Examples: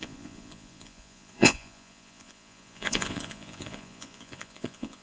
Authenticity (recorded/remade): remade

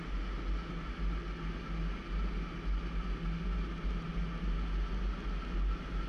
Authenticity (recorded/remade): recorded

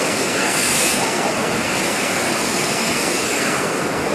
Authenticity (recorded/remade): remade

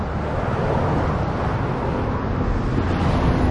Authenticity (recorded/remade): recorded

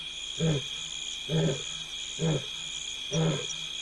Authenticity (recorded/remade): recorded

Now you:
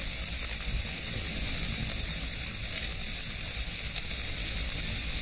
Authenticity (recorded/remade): recorded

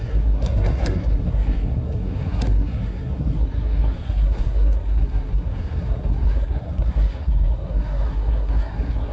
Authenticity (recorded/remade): remade